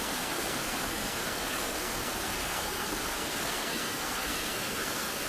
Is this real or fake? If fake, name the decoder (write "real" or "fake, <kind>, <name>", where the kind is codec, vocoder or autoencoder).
fake, codec, SNAC